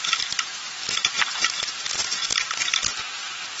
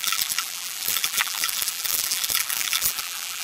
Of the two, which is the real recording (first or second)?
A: first